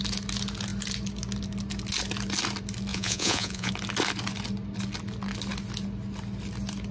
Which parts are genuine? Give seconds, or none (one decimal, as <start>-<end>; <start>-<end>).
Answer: 0.0-2.9; 3.7-6.9